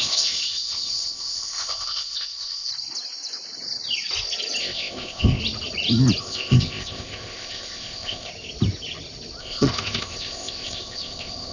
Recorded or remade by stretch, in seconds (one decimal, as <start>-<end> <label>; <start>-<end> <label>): 0.0-2.7 remade; 2.7-4.6 recorded; 4.6-5.4 remade; 5.4-6.2 recorded; 6.2-8.3 remade; 8.3-9.4 recorded; 9.4-11.5 remade